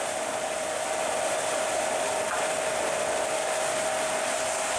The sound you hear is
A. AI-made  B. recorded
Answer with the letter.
B